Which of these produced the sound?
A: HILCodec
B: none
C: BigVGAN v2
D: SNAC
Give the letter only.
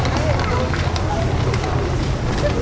B